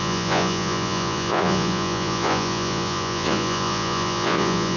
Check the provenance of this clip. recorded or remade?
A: remade